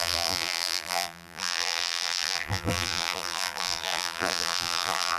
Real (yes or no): no